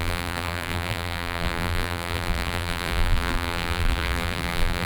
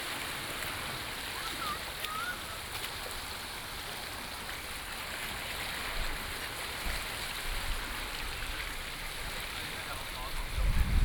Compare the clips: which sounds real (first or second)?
second